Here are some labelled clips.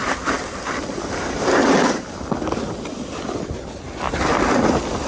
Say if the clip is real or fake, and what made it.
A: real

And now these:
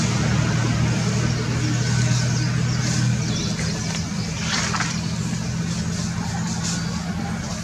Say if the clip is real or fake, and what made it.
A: real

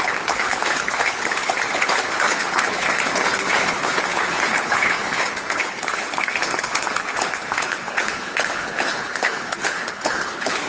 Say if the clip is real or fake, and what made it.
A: fake, codec, HILCodec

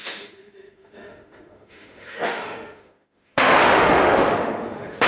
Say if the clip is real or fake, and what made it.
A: fake, autoencoder, DAC-VAE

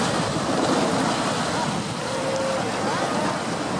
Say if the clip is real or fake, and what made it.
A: real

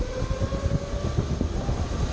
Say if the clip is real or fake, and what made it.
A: real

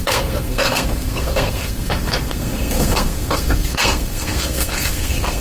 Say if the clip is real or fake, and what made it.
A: fake, codec, SNAC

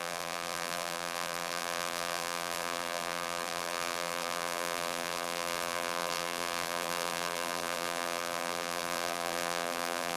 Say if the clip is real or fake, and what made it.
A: fake, vocoder, BigVGAN v2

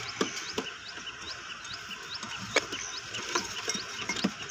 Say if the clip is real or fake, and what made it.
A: real